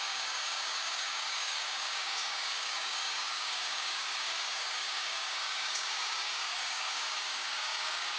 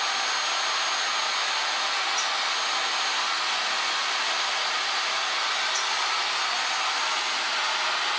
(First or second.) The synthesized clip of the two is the first